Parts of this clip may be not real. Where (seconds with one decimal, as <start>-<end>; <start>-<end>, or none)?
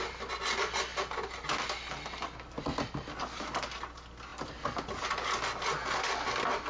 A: none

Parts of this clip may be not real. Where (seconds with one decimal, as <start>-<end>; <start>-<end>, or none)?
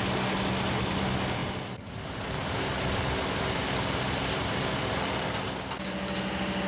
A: none